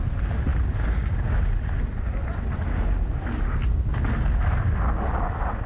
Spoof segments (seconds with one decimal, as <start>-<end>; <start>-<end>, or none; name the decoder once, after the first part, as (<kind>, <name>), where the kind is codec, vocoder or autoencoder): none